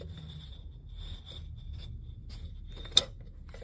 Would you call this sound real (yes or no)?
yes